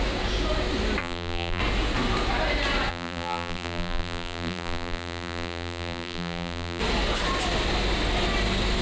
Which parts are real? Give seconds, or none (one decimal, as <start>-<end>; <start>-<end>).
0.0-1.0; 1.6-2.9; 6.8-8.8